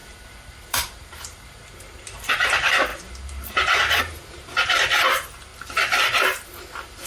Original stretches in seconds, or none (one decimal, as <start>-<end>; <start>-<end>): 5.5-7.1

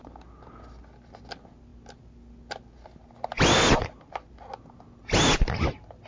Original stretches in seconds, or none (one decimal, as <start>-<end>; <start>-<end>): 0.0-6.1